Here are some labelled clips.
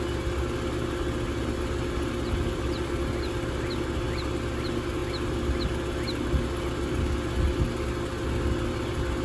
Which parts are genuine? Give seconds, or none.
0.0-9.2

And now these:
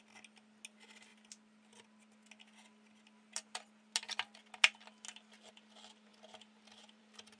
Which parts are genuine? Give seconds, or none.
0.0-7.4